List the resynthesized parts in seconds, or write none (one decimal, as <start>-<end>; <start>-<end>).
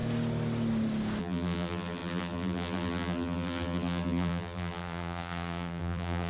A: 1.2-6.3